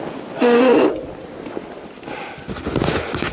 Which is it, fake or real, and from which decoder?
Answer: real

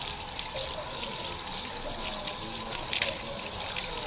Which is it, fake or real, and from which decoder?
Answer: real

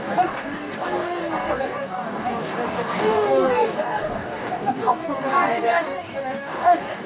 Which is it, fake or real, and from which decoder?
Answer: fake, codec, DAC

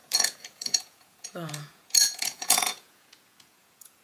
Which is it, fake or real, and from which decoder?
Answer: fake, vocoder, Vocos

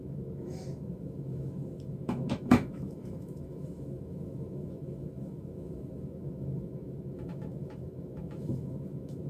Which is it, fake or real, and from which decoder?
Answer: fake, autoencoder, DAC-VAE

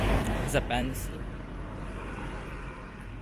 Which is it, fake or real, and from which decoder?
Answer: fake, vocoder, BigVGAN v2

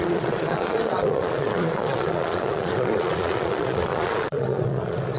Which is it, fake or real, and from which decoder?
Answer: fake, vocoder, Vocos